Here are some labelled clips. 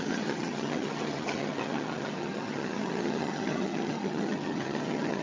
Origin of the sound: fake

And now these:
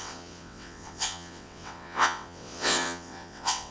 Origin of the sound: fake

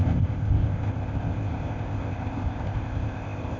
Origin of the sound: fake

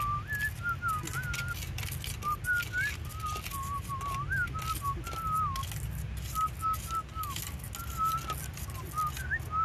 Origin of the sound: real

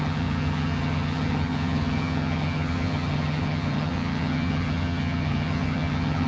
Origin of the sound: fake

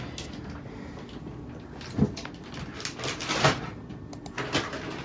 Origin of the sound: real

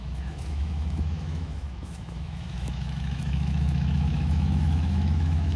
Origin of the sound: fake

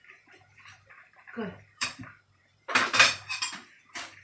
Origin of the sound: fake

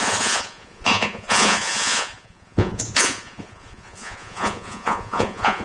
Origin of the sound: fake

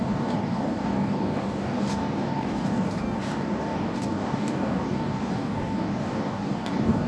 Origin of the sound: fake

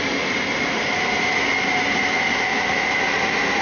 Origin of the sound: real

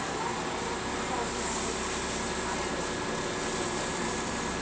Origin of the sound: real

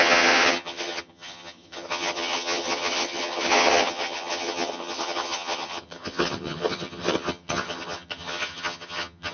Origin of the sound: fake